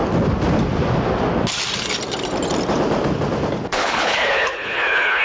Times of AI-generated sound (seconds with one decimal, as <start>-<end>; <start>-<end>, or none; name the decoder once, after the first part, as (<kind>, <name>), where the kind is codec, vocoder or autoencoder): 3.8-5.2 (codec, HILCodec)